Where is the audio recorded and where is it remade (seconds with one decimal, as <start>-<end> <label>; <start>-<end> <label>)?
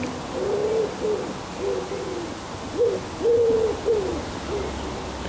0.0-5.3 recorded